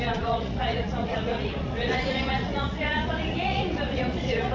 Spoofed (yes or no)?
yes